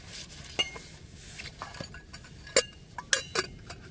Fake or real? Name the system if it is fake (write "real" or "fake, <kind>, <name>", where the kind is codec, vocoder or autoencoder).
real